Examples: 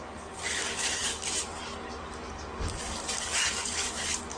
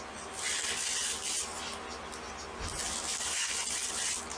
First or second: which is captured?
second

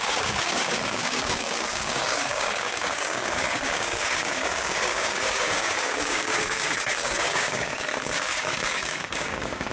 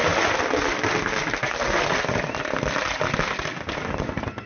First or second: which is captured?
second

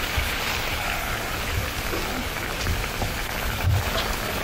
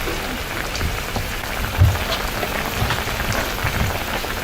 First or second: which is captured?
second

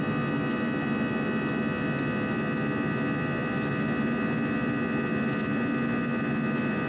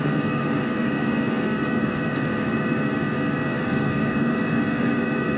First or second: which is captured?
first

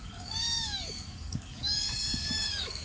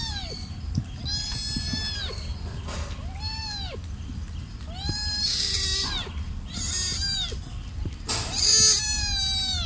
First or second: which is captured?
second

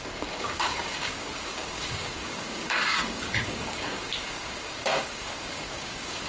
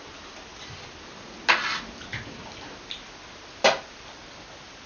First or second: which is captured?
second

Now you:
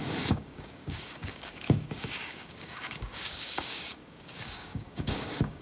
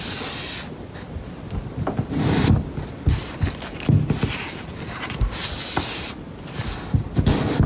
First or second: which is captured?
second